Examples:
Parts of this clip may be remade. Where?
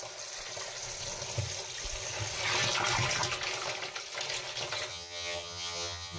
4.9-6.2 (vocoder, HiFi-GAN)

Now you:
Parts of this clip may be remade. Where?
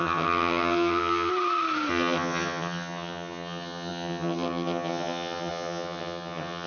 0.0-1.3 (vocoder, HiFi-GAN); 1.9-6.7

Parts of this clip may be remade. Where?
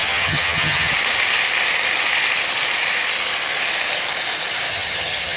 0.0-0.9 (vocoder, HiFi-GAN); 4.7-5.4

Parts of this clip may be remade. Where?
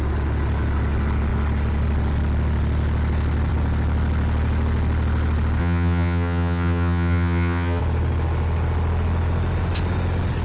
5.6-7.8 (vocoder, HiFi-GAN)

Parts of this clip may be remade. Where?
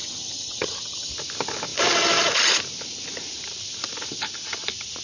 0.0-1.1 (vocoder, HiFi-GAN)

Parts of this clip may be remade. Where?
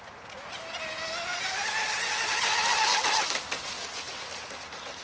none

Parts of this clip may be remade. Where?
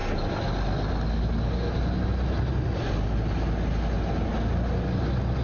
none